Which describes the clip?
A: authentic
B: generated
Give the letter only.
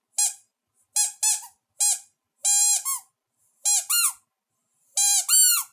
A